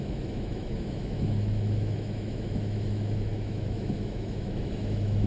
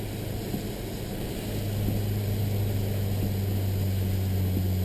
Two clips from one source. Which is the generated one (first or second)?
first